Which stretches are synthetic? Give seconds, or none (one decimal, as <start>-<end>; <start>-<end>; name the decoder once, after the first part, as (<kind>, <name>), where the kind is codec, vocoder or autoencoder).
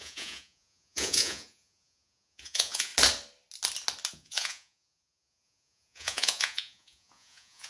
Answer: 0.0-2.9 (vocoder, Vocos); 4.1-7.7